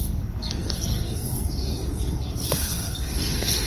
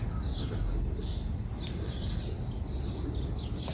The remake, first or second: first